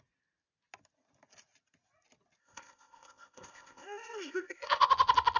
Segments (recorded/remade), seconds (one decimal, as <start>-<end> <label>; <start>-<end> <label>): 0.0-2.4 recorded; 2.4-4.9 remade; 4.9-5.4 recorded